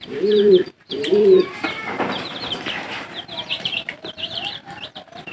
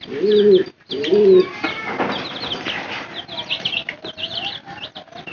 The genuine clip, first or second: second